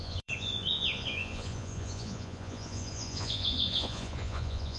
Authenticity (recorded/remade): remade